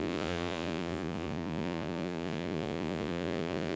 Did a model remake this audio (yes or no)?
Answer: yes